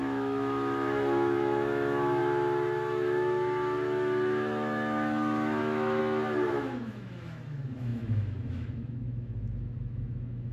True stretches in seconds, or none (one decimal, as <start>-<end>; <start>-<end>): 6.0-6.5